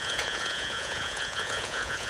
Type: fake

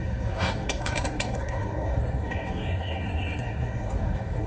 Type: fake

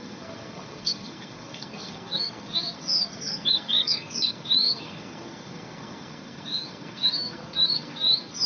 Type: fake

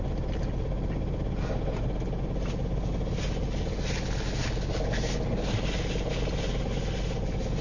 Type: real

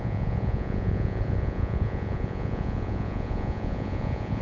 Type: fake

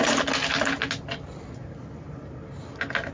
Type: real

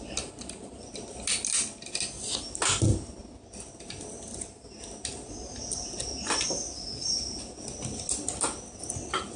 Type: real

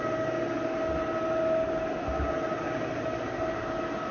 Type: real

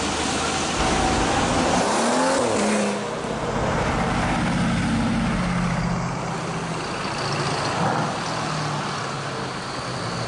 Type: real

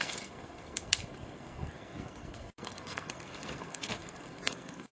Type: fake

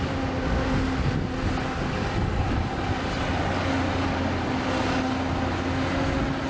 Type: real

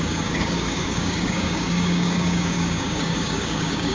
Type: fake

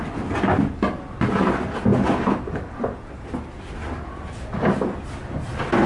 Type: real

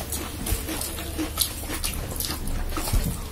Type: real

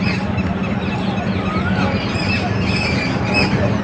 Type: real